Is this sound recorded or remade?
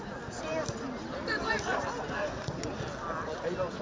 recorded